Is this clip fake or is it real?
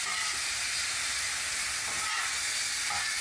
real